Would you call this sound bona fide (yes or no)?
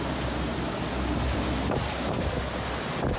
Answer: yes